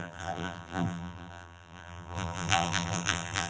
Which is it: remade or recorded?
remade